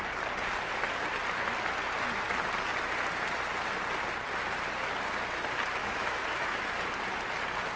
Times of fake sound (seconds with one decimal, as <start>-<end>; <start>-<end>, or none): 5.8-6.6